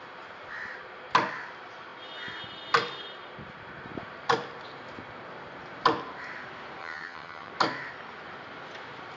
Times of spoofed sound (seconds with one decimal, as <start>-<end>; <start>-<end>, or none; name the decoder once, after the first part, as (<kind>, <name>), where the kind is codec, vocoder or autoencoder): 6.8-7.5 (vocoder, HiFi-GAN)